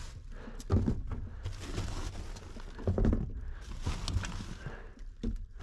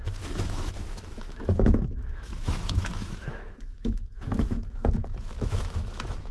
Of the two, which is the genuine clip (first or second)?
first